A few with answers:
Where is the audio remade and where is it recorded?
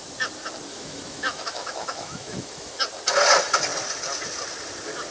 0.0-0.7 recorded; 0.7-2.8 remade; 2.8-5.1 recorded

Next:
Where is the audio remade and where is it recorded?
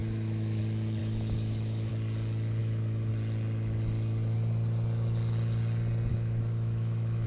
0.0-0.6 remade; 0.6-1.0 recorded; 1.0-1.9 remade; 1.9-2.6 recorded; 2.6-3.1 remade; 3.1-6.1 recorded; 6.1-7.3 remade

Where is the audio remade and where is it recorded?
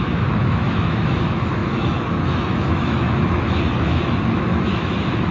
0.0-5.3 remade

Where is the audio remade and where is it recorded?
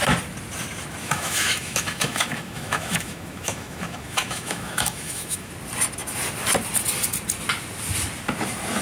0.0-1.0 recorded; 1.0-5.5 remade; 5.5-8.8 recorded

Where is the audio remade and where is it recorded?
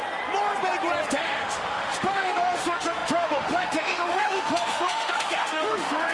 0.0-1.1 recorded; 1.1-6.1 remade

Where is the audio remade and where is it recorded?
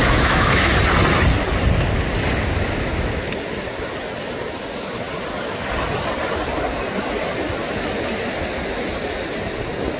0.0-0.7 remade; 0.7-10.0 recorded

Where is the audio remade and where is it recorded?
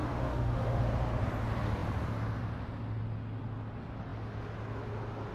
0.0-0.8 remade; 0.8-5.3 recorded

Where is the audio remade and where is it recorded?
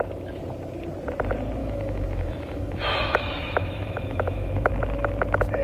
0.0-1.6 recorded; 1.6-4.7 remade; 4.7-5.6 recorded